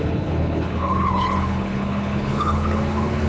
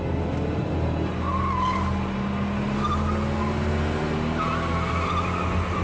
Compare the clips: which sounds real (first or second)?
second